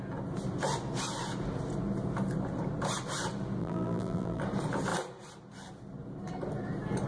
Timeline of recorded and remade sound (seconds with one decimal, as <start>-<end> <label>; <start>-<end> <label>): 0.0-3.6 recorded; 3.6-4.4 remade; 4.4-7.1 recorded